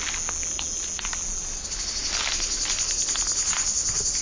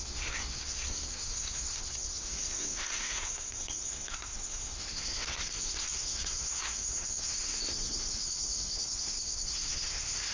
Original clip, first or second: first